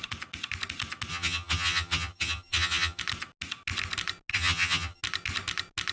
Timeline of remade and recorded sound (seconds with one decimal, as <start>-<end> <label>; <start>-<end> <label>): 0.0-1.1 recorded; 1.1-3.0 remade; 3.0-4.3 recorded; 4.3-5.0 remade; 5.0-5.9 recorded